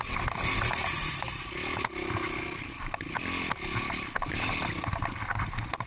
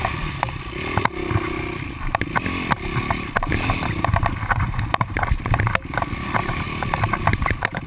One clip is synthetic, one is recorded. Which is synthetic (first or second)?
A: second